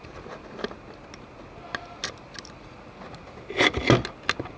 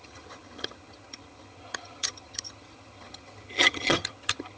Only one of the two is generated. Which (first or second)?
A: second